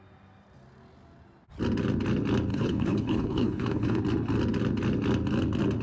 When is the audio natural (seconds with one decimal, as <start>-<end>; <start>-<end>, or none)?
0.0-2.5; 4.0-5.8